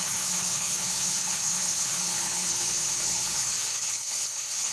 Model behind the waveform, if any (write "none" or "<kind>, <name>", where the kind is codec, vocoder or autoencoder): codec, HILCodec